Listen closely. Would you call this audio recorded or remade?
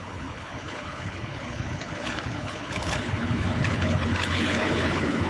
remade